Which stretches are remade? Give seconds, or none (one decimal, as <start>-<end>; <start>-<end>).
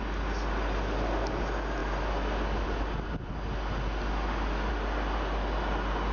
none